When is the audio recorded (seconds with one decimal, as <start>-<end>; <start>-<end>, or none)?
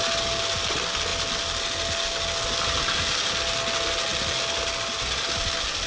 0.0-5.9